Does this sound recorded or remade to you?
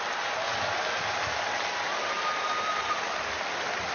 recorded